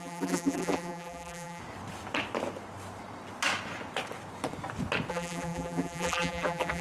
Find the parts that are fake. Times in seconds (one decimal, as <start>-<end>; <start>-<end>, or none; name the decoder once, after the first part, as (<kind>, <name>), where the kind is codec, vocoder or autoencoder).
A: 0.0-1.6 (vocoder, BigVGAN v2); 5.1-6.8